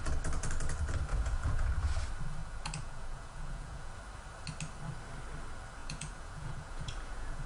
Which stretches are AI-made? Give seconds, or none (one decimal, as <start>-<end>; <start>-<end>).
1.1-1.7; 2.4-3.9; 5.8-7.5